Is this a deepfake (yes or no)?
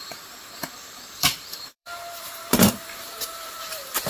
yes